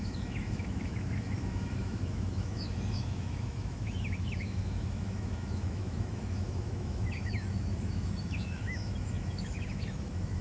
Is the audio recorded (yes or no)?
no